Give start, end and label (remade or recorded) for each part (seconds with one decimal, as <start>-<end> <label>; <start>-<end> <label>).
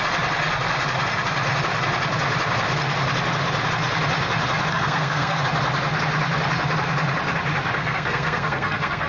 0.0-4.7 recorded; 4.7-5.4 remade; 5.4-7.8 recorded; 7.8-9.1 remade